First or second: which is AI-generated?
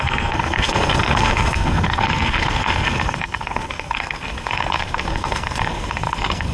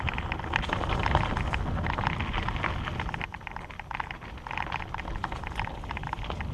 first